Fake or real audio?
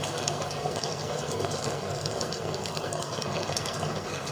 fake